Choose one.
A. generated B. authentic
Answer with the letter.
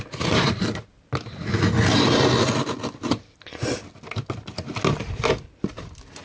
B